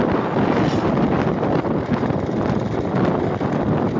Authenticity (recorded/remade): recorded